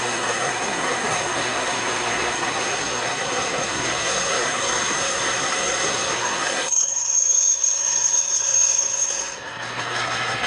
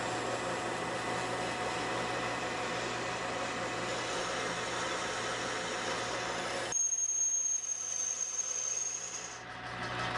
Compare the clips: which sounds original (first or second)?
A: second